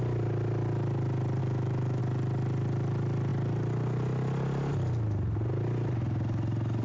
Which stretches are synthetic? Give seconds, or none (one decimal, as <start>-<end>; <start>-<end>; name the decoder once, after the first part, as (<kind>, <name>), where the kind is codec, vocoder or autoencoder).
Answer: 1.4-2.0 (autoencoder, DAC-VAE)